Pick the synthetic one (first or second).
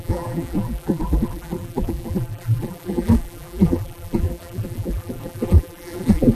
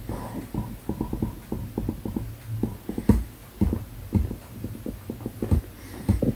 first